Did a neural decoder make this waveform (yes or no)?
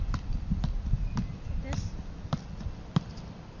no